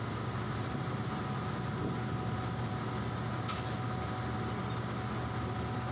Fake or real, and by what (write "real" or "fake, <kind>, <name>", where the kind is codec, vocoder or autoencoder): real